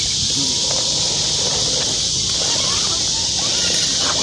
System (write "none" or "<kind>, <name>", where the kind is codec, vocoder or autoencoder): none